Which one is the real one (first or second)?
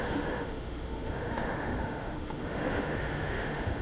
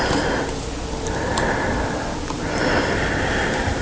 second